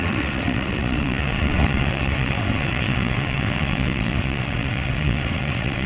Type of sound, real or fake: fake